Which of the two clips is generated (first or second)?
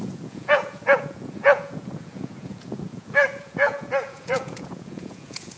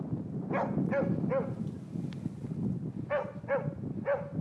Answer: first